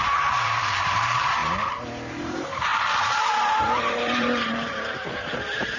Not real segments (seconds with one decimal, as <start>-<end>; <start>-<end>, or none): 0.0-1.4; 2.1-2.7; 3.6-5.8